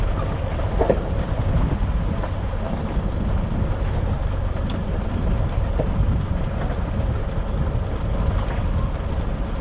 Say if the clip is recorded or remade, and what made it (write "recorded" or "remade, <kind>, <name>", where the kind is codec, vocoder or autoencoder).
recorded